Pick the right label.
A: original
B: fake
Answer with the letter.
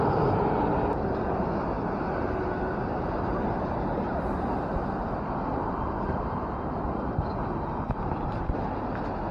A